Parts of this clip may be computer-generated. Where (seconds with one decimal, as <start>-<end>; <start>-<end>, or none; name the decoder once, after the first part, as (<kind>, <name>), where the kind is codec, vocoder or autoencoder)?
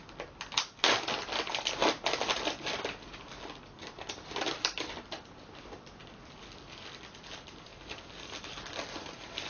none